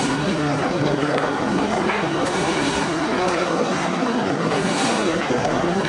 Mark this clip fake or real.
fake